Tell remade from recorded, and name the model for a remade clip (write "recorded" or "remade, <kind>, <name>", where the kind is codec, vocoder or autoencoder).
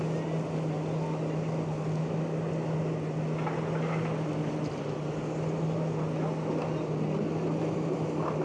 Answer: recorded